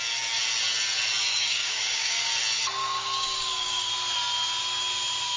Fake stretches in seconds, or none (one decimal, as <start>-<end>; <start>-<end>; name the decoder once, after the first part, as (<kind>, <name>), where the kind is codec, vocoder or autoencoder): 1.3-2.3 (codec, DAC); 2.8-3.9